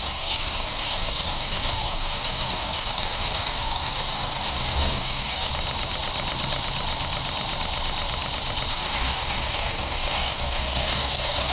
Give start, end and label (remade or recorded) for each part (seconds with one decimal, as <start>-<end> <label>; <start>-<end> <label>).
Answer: 0.0-5.5 remade; 5.5-8.7 recorded; 8.7-11.5 remade